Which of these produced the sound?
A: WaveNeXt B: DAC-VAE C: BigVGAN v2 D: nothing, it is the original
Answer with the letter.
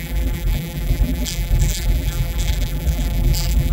C